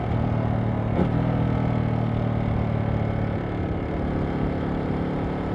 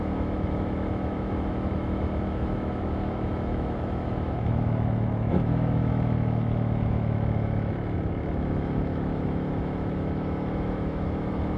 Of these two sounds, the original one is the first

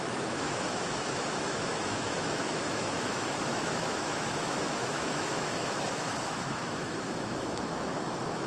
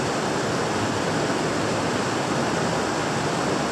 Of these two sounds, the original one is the second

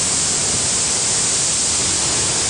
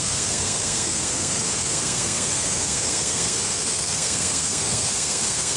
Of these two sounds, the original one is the first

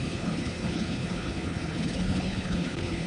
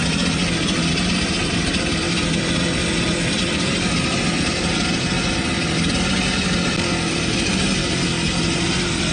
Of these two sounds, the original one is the second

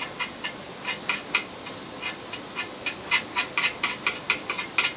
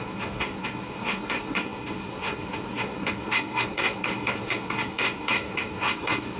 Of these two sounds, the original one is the first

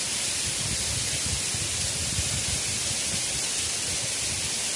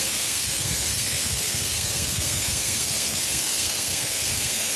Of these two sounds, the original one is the first